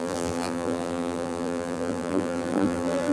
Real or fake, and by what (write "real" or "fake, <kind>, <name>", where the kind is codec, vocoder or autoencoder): fake, vocoder, BigVGAN v2